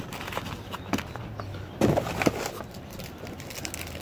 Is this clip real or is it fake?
real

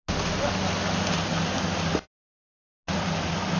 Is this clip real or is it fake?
real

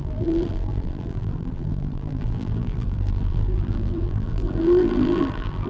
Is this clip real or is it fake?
fake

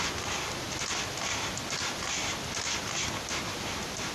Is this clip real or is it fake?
real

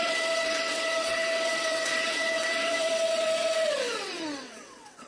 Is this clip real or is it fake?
fake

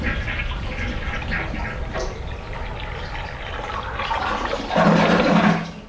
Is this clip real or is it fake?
real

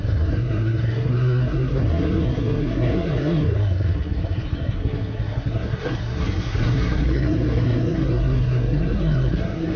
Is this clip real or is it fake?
fake